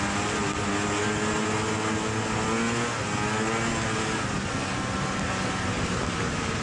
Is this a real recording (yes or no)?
yes